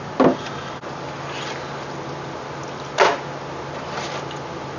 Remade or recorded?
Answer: recorded